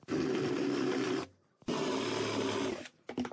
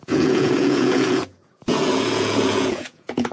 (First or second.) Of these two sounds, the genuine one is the first